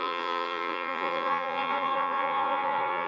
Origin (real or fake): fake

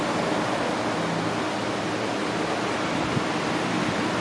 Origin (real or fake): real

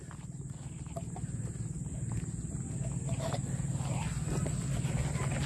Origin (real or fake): real